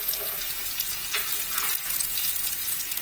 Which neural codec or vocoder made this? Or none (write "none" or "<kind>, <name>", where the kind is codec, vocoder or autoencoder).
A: vocoder, Vocos